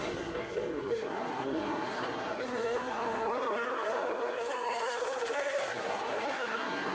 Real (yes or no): no